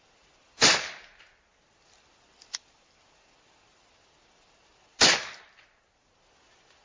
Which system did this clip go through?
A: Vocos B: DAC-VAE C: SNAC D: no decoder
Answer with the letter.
D